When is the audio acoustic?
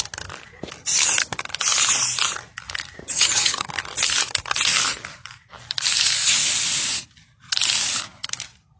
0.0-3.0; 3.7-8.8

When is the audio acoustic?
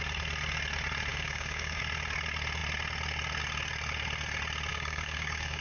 0.0-1.1; 1.8-4.7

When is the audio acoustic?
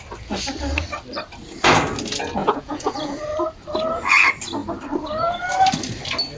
0.0-2.4; 3.2-6.4